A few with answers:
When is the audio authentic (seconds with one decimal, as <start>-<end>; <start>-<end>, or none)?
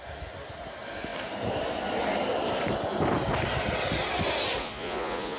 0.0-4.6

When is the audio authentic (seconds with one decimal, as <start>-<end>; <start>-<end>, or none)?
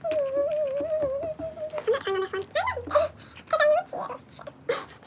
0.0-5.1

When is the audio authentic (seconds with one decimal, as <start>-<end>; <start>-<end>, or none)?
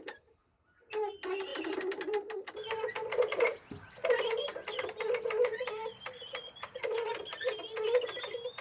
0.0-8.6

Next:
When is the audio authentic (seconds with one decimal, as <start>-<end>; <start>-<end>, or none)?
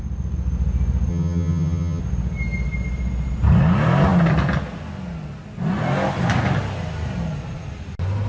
0.0-1.1; 2.0-8.3